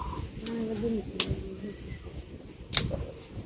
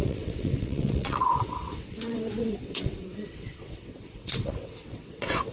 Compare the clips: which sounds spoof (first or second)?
second